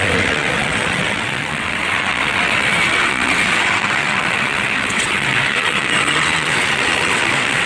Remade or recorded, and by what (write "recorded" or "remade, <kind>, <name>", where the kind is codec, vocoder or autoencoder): remade, vocoder, WaveNeXt